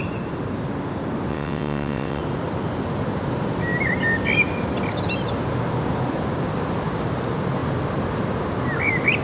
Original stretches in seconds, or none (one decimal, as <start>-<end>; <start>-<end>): 0.0-1.3; 2.2-9.2